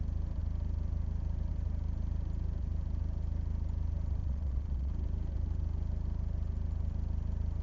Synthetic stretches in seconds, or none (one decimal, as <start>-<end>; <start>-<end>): 4.2-4.9